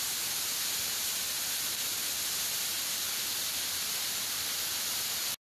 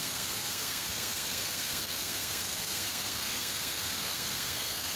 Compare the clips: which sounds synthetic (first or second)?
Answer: second